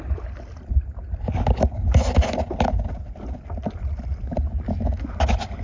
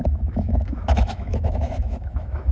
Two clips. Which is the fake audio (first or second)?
second